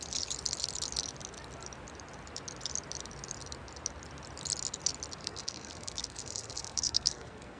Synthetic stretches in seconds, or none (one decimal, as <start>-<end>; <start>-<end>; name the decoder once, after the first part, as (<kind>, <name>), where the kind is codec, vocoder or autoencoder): 5.2-7.6 (codec, SNAC)